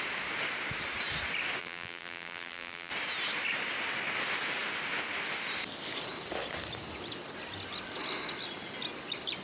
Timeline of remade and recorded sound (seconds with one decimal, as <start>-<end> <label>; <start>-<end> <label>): 0.0-1.6 recorded; 1.6-2.9 remade; 2.9-9.4 recorded